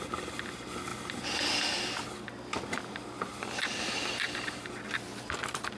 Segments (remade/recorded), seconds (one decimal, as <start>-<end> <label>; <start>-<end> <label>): 0.0-5.8 recorded